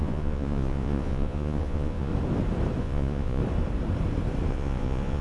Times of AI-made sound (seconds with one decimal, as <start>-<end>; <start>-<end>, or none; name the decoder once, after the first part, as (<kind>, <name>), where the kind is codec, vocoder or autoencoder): 0.0-2.1 (vocoder, Vocos); 2.8-3.4; 4.5-5.2